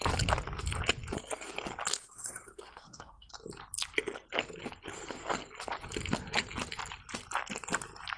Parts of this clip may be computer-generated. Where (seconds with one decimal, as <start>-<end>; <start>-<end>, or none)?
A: 2.0-3.3